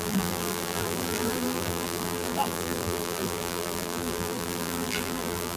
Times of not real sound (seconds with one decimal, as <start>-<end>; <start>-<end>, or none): 0.0-5.6